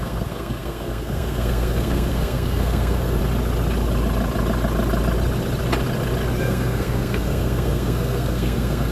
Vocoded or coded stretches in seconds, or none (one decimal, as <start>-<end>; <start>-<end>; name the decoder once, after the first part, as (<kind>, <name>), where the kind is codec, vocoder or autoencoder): 0.0-3.2 (codec, SNAC); 6.4-8.9

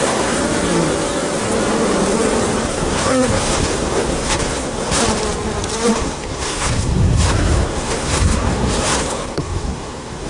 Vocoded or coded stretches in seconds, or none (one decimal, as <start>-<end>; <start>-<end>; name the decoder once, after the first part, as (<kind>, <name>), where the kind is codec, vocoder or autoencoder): 0.0-0.4 (codec, SNAC); 2.7-5.0; 5.9-10.3

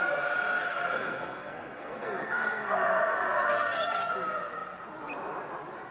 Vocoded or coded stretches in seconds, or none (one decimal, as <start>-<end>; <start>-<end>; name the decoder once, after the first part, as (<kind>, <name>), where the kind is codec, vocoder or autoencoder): 0.6-4.1 (codec, SNAC)

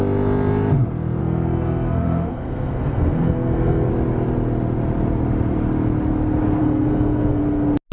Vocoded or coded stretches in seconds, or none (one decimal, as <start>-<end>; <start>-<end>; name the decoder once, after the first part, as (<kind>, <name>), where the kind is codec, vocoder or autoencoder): 1.2-3.9 (codec, SNAC); 6.6-7.4

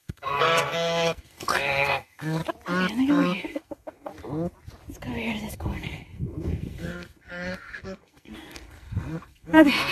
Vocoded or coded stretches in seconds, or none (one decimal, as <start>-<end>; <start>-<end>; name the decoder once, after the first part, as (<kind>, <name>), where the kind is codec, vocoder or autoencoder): 0.0-2.4 (codec, SNAC); 3.1-4.1; 5.5-9.9

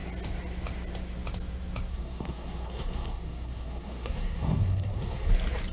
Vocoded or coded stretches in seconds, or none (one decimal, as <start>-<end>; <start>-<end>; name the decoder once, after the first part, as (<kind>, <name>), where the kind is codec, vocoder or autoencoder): 1.9-5.3 (codec, SNAC)

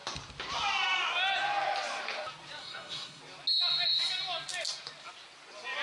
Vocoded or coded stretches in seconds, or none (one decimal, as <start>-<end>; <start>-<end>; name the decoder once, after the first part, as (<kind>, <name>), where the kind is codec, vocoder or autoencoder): 2.6-3.2 (codec, SNAC)

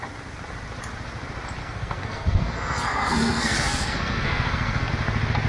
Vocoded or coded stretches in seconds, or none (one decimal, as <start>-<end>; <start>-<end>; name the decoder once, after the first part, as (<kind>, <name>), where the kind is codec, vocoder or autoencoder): 1.6-4.9 (codec, SNAC)